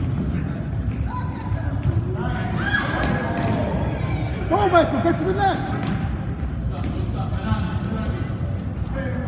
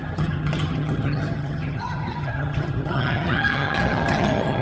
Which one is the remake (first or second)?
second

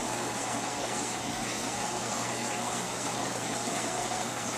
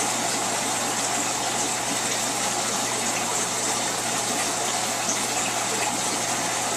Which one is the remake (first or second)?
first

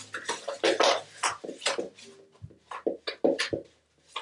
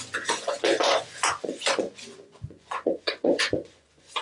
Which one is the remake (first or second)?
second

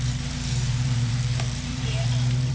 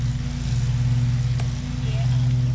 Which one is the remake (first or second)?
first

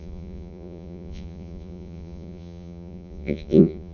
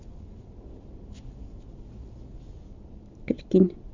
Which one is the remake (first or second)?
first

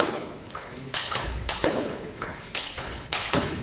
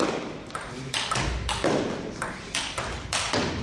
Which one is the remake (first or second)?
first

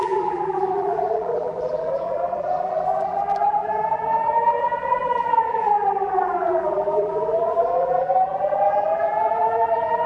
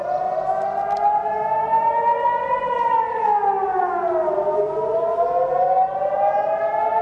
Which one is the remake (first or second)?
first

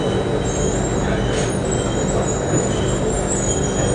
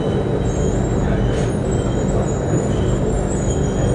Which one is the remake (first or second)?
second